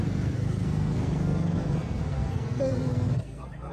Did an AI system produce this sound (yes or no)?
yes